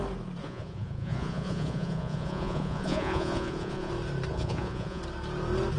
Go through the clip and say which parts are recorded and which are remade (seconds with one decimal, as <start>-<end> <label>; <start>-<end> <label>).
0.0-0.4 recorded; 0.4-3.9 remade; 3.9-4.3 recorded; 4.3-5.0 remade; 5.0-5.8 recorded